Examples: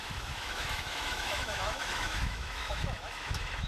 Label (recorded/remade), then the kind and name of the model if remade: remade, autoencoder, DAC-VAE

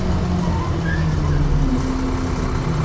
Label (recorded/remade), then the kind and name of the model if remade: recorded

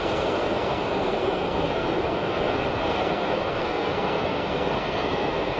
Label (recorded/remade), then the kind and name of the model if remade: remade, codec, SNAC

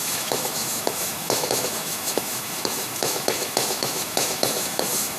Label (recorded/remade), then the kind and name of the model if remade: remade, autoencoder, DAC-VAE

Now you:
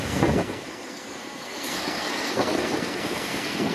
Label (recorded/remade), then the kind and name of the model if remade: remade, codec, SNAC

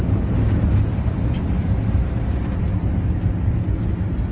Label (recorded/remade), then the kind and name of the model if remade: recorded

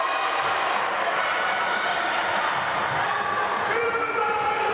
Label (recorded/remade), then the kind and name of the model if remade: recorded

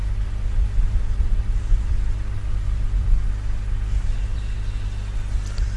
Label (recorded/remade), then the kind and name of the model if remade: recorded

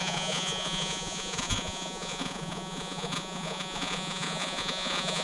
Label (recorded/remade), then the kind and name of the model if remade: remade, vocoder, Vocos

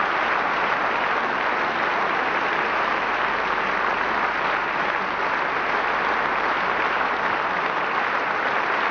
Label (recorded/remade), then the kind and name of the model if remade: recorded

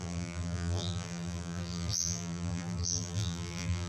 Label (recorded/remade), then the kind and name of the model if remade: remade, vocoder, BigVGAN v2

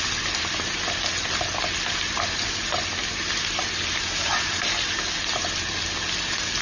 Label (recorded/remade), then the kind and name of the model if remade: recorded